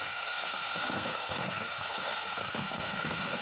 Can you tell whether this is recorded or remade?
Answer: remade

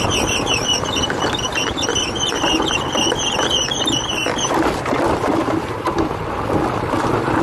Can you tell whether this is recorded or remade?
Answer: recorded